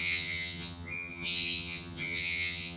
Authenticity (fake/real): fake